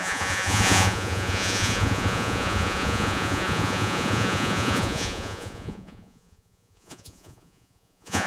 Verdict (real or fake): fake